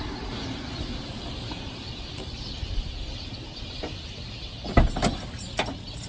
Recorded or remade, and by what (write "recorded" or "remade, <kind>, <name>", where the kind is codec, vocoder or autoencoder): recorded